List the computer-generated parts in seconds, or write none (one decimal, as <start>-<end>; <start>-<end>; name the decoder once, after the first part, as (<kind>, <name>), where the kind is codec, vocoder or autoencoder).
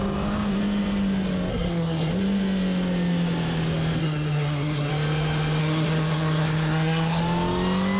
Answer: 1.5-2.1 (codec, SNAC); 4.0-4.9; 5.6-7.2